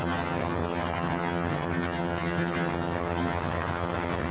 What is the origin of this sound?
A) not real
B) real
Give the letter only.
A